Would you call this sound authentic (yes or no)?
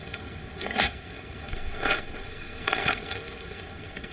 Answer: no